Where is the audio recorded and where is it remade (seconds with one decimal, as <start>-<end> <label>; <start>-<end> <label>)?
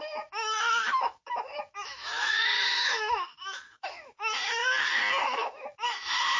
0.0-4.6 remade; 4.6-5.2 recorded; 5.2-6.4 remade